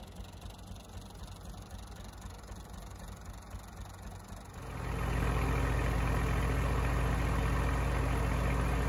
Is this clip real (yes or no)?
yes